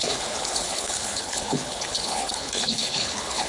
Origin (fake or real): fake